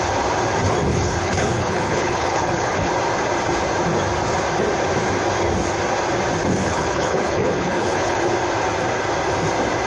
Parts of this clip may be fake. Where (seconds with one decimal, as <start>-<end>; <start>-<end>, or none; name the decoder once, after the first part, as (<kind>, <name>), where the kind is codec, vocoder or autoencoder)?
0.9-2.9 (codec, HILCodec); 6.6-8.2